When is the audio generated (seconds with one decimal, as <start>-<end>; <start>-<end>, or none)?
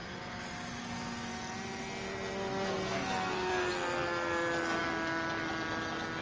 none